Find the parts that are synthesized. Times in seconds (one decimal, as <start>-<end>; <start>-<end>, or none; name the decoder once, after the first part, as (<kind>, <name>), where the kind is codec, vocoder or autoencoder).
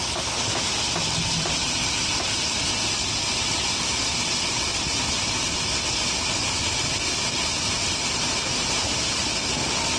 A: 8.5-9.5 (vocoder, BigVGAN v2)